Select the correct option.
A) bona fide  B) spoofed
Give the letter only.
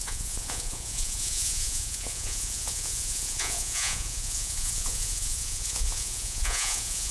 B